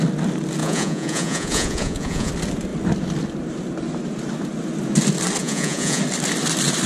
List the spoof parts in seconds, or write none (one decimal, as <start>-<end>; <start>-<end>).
0.6-2.3; 5.4-6.0